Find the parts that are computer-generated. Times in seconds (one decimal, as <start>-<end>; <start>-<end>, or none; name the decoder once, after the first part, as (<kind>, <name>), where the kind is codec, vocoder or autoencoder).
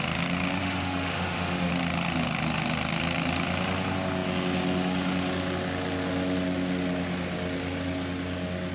0.6-1.7 (autoencoder, DAC-VAE)